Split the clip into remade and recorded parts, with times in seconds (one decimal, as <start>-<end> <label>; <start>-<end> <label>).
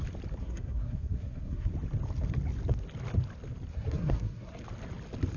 0.0-0.4 recorded; 0.4-1.7 remade; 1.7-3.7 recorded; 3.7-4.5 remade; 4.5-5.4 recorded